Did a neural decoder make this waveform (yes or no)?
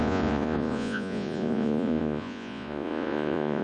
yes